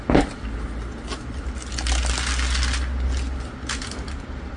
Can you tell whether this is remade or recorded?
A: recorded